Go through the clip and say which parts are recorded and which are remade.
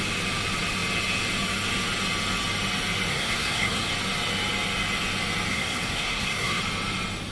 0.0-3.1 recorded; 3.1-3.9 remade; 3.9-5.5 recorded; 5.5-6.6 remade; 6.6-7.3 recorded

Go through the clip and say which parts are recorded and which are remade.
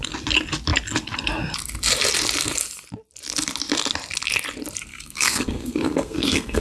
0.0-4.9 recorded; 4.9-6.6 remade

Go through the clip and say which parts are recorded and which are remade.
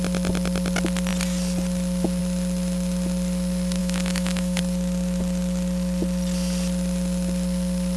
0.0-3.8 recorded; 3.8-4.6 remade; 4.6-8.0 recorded